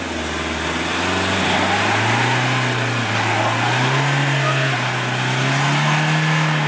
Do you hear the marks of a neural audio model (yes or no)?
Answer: no